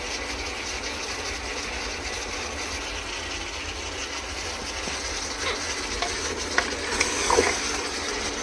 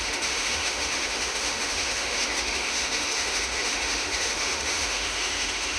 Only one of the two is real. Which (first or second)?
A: first